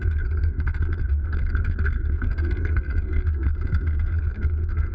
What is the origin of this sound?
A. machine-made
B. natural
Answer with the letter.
A